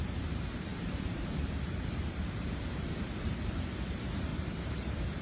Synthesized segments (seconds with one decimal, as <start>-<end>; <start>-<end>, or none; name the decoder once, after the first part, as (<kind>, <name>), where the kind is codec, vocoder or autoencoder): 0.0-5.2 (vocoder, BigVGAN v2)